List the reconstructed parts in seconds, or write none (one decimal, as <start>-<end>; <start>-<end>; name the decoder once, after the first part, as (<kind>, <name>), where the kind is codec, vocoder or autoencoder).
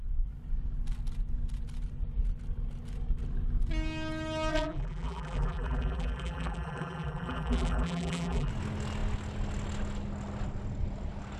4.5-8.5 (vocoder, BigVGAN v2)